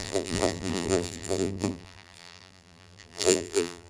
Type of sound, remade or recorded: remade